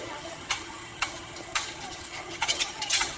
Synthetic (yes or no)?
yes